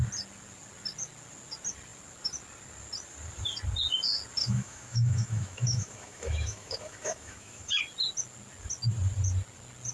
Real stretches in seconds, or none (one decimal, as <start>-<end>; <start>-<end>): 0.0-4.4; 7.8-9.9